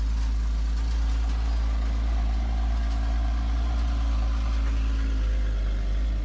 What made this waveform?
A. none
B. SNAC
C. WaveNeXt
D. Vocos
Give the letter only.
A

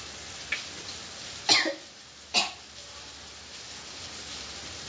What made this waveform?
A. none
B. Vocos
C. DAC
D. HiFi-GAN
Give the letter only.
A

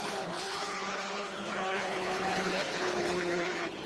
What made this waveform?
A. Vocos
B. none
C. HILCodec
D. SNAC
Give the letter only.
C